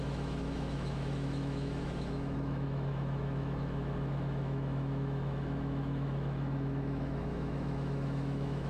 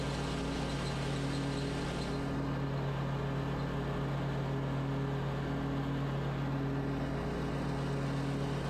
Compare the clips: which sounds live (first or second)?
second